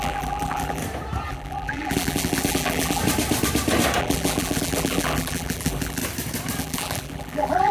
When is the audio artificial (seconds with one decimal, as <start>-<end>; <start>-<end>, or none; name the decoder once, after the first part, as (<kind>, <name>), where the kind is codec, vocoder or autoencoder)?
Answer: 0.0-0.8 (vocoder, BigVGAN v2); 1.3-3.0; 4.0-6.0; 6.6-7.7